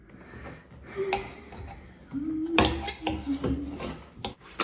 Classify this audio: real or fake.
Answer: real